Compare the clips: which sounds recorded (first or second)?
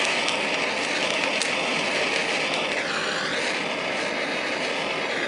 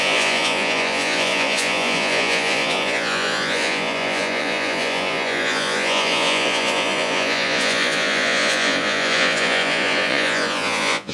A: first